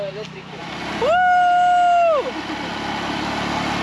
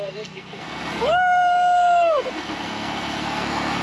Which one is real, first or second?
first